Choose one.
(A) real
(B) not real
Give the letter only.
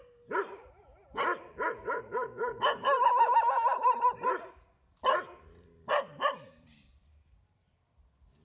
A